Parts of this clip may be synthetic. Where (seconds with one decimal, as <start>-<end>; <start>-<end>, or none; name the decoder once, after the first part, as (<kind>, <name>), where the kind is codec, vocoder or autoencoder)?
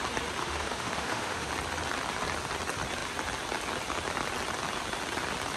0.4-1.5 (autoencoder, DAC-VAE)